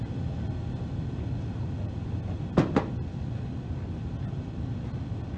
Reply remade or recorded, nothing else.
recorded